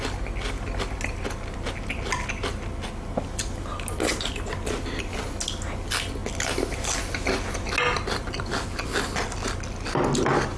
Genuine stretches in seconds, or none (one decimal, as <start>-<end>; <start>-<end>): 0.0-10.6